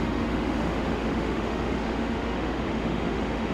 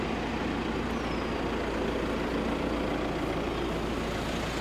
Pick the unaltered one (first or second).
second